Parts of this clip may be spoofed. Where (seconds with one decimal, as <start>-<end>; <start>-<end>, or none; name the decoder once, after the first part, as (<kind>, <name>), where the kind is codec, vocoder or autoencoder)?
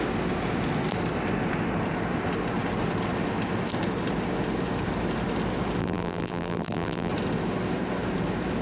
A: 5.8-7.1 (vocoder, BigVGAN v2)